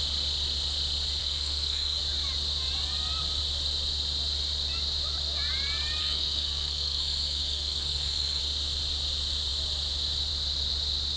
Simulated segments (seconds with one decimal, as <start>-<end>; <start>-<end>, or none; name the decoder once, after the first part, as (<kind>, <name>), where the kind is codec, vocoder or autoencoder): 1.2-2.0 (codec, SNAC); 6.0-8.4